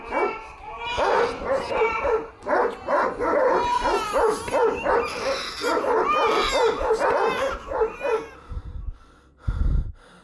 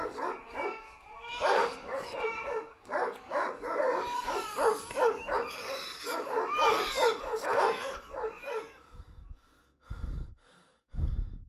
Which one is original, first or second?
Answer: first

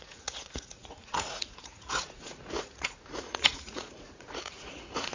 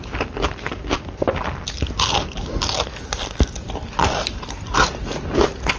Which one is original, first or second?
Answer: second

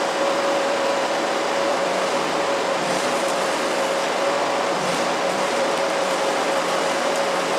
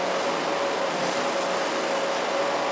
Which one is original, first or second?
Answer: second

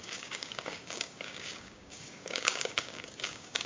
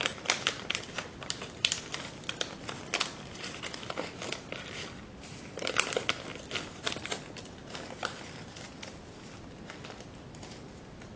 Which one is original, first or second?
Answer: second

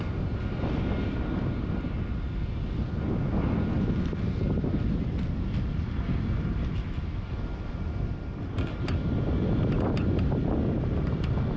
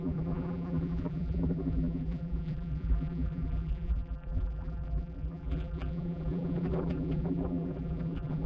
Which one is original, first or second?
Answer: first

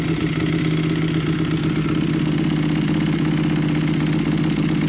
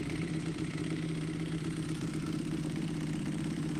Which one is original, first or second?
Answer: first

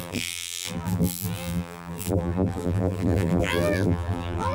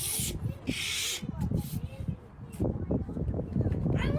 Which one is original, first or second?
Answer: second